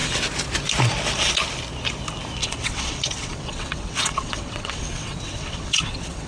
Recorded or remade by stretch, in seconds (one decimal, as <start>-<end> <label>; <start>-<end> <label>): 0.0-2.4 recorded; 2.4-6.3 remade